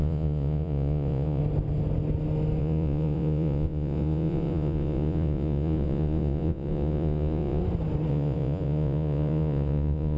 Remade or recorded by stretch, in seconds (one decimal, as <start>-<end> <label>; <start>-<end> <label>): 0.0-1.4 remade; 1.4-2.6 recorded; 2.6-7.6 remade; 7.6-8.1 recorded; 8.1-10.2 remade